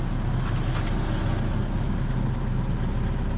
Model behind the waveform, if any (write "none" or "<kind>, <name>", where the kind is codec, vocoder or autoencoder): none